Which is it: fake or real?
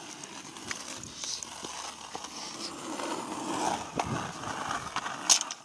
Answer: real